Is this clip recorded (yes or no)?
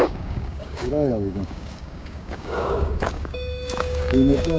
no